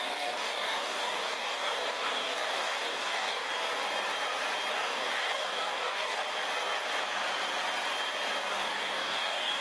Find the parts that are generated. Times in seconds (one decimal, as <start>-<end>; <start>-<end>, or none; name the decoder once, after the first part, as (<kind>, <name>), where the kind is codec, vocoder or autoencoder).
0.0-3.5 (codec, DAC); 4.7-6.2; 8.5-9.6